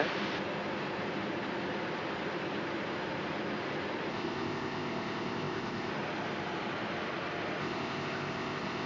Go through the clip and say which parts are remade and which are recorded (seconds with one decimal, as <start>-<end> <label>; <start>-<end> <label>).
0.0-4.1 recorded; 4.1-5.9 remade; 5.9-7.6 recorded; 7.6-8.9 remade